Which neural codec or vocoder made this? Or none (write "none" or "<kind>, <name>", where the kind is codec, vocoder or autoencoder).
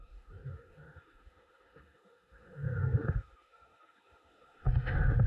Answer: autoencoder, DAC-VAE